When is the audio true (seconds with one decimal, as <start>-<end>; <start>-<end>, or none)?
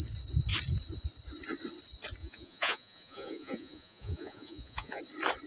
0.0-2.2; 5.0-5.5